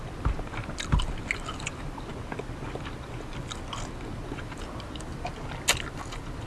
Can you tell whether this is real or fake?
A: real